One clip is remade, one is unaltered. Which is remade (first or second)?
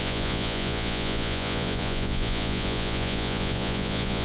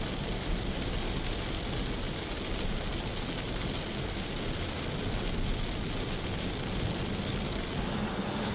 first